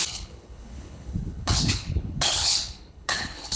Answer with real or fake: fake